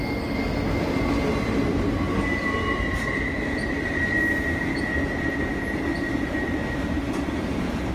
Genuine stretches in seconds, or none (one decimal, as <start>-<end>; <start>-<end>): 0.0-7.9